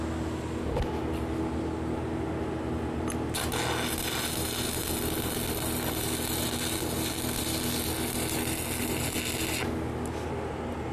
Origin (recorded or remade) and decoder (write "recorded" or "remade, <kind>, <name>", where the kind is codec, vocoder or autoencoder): recorded